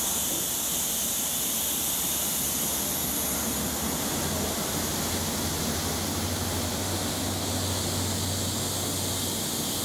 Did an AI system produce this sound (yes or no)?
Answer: no